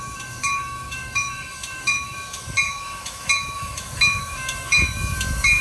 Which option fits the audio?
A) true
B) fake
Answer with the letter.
B